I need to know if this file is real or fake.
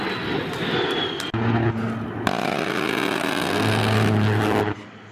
real